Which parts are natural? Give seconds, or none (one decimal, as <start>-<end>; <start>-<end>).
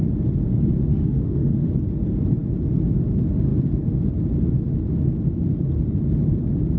0.0-0.9; 1.7-6.8